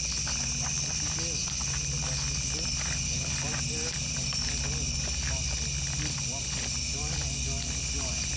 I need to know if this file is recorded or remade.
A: recorded